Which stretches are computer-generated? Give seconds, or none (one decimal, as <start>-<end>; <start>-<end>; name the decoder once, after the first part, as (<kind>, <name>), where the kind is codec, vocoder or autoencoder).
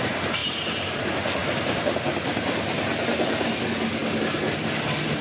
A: 0.4-1.0 (vocoder, BigVGAN v2); 1.4-1.9